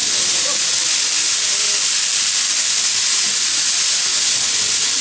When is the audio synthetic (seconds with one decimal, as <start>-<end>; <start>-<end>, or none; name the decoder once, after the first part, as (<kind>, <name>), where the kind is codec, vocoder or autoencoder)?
none